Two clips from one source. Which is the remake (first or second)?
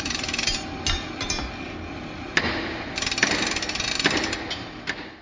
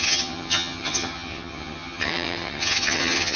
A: second